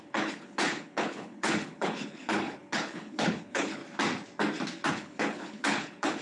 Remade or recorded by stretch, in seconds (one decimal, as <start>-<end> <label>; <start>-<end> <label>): 0.0-3.8 remade; 3.8-4.9 recorded; 4.9-6.2 remade